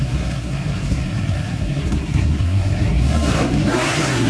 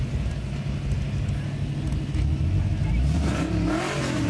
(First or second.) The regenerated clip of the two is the first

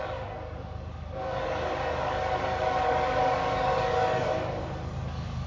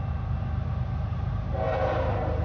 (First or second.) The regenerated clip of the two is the first